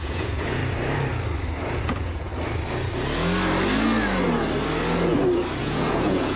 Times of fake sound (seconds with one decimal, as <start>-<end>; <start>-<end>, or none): 0.0-0.6; 1.8-2.3; 5.6-6.4